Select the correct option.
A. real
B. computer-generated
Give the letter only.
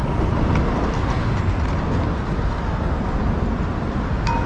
A